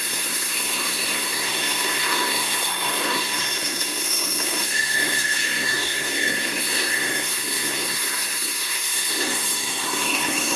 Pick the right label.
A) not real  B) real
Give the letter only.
A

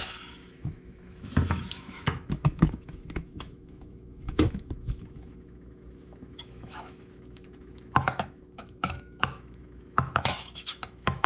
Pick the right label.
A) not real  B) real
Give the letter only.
A